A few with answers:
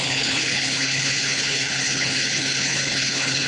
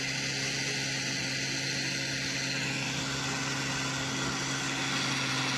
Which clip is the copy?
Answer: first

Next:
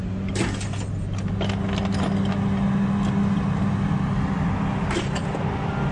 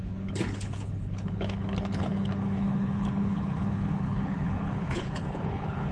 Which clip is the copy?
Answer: second